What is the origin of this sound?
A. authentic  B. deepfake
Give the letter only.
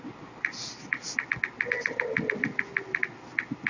A